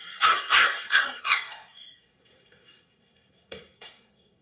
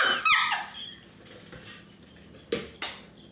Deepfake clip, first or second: first